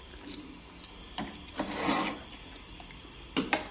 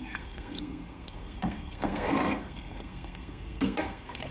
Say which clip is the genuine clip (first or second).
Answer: first